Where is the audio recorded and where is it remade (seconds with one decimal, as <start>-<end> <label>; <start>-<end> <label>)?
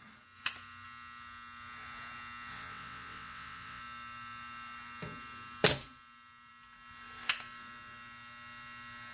0.0-2.5 recorded; 2.5-3.8 remade; 3.8-9.1 recorded